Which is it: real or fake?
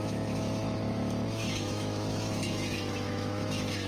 fake